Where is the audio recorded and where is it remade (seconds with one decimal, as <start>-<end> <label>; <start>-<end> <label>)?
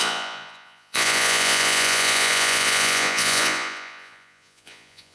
0.0-5.1 remade